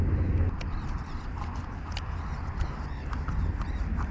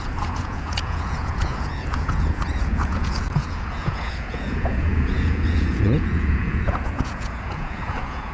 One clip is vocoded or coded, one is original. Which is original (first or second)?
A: first